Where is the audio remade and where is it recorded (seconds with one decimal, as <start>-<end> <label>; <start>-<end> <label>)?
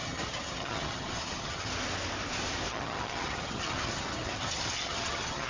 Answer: 0.0-1.7 remade; 1.7-2.7 recorded; 2.7-5.5 remade